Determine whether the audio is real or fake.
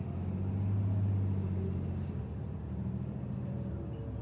real